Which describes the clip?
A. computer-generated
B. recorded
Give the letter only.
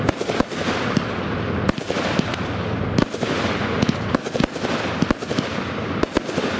B